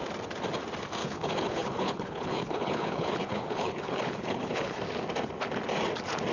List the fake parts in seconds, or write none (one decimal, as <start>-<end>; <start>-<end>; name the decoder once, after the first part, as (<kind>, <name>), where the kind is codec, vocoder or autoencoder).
1.0-4.8 (codec, HILCodec)